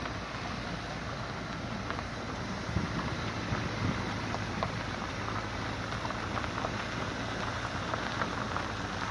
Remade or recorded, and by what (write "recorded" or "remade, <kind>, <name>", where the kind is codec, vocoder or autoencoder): recorded